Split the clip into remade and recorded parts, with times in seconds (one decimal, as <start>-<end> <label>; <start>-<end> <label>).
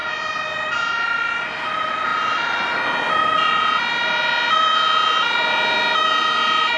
0.0-6.8 recorded